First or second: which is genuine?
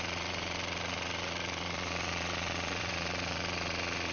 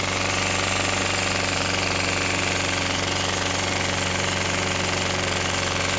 second